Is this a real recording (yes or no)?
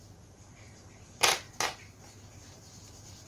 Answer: yes